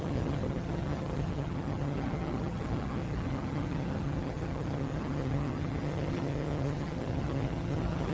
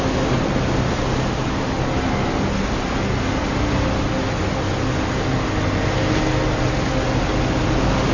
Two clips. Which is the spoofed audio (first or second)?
first